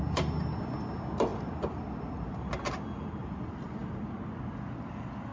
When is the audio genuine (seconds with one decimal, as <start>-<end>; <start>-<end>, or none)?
0.0-5.3